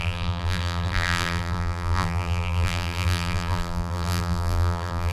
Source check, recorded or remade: remade